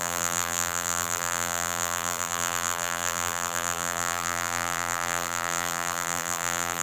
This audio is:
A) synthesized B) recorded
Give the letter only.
A